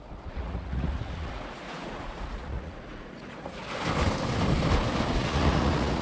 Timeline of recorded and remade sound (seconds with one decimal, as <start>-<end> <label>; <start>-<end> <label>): 0.0-3.6 remade; 3.6-5.2 recorded; 5.2-6.0 remade